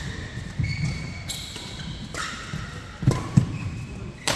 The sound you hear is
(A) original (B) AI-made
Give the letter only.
B